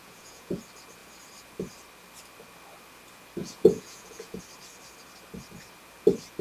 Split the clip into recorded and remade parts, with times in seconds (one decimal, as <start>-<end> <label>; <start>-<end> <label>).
0.0-0.6 remade; 0.6-3.4 recorded; 3.4-4.4 remade; 4.4-6.4 recorded